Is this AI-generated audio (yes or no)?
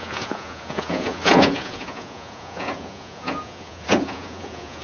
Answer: yes